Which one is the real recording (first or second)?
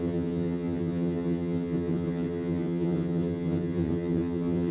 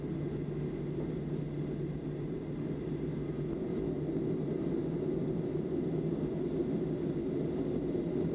second